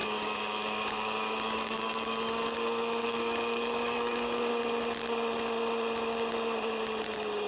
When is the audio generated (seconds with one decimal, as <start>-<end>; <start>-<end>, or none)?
0.0-4.5